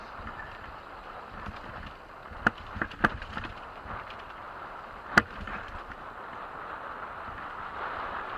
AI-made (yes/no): yes